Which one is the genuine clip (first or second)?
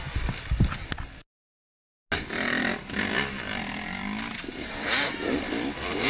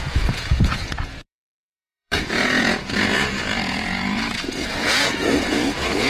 first